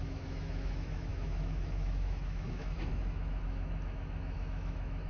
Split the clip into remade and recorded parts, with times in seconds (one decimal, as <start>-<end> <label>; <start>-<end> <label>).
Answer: 0.0-5.1 remade

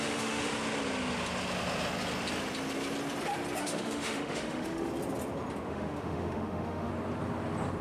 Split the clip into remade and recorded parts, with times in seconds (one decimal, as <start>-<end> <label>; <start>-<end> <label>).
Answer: 0.0-0.5 remade; 0.5-3.6 recorded; 3.6-4.9 remade; 4.9-5.7 recorded; 5.7-6.9 remade; 6.9-7.8 recorded

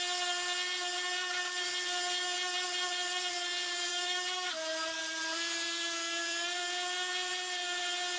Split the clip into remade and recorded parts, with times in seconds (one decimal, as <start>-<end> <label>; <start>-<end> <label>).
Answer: 0.0-3.9 recorded; 3.9-4.5 remade; 4.5-8.2 recorded

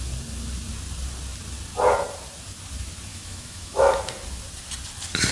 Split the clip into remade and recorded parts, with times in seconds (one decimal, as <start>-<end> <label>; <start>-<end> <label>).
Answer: 0.0-3.1 recorded; 3.1-4.0 remade; 4.0-5.3 recorded

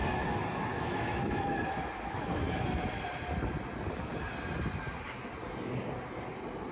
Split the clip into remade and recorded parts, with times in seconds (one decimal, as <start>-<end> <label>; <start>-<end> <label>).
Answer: 0.0-0.7 recorded; 0.7-2.8 remade; 2.8-6.7 recorded

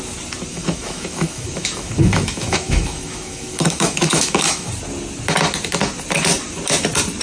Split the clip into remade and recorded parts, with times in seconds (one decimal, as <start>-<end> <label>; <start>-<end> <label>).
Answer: 0.0-0.5 recorded; 0.5-4.7 remade; 4.7-7.2 recorded

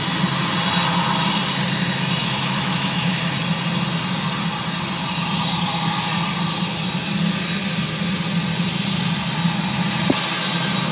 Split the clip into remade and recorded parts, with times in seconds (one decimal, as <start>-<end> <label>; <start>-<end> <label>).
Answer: 0.0-2.2 recorded; 2.2-3.2 remade; 3.2-10.9 recorded

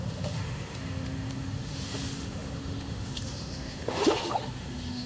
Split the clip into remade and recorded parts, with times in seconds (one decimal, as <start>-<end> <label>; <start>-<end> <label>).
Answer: 0.0-5.1 remade